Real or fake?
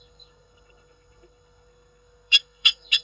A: fake